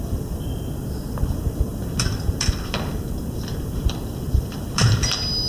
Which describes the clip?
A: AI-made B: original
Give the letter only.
A